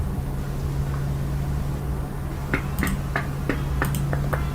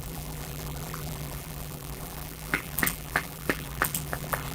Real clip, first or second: first